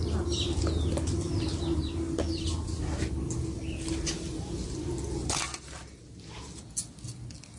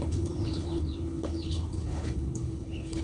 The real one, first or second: first